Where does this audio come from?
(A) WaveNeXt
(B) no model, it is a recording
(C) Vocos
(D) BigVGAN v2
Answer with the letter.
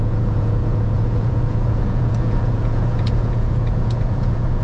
C